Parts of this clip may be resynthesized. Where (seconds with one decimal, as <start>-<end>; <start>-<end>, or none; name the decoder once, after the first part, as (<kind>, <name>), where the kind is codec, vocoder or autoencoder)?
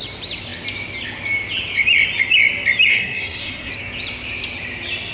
2.9-3.7 (codec, SNAC)